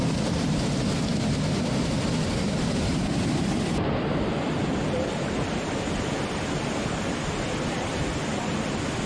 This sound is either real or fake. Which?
real